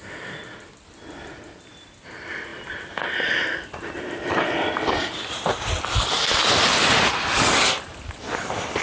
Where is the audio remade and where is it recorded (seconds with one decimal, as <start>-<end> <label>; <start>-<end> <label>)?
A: 0.0-8.8 recorded